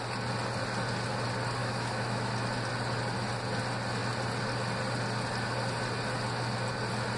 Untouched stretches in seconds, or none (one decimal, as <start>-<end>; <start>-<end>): 0.0-1.6; 2.3-7.2